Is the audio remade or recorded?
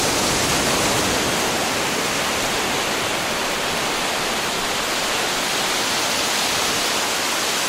recorded